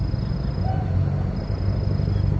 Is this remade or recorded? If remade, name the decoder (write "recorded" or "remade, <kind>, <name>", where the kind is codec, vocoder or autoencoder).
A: recorded